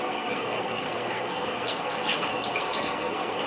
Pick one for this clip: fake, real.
fake